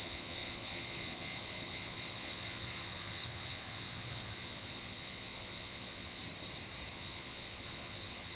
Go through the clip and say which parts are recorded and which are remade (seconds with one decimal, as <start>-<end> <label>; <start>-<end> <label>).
0.0-6.2 remade; 6.2-6.9 recorded; 6.9-8.4 remade